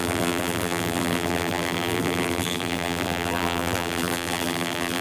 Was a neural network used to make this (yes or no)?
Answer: yes